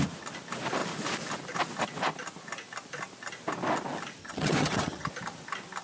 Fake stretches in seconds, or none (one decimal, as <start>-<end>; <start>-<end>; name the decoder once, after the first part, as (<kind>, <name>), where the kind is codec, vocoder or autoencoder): 4.2-5.1 (vocoder, HiFi-GAN)